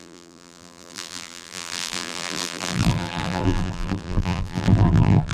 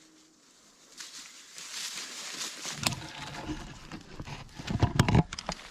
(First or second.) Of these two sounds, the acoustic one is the second